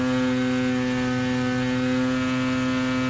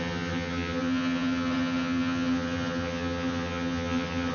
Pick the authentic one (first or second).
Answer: first